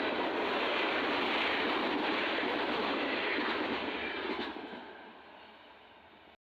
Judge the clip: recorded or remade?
recorded